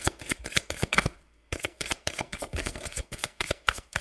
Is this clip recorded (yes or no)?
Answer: no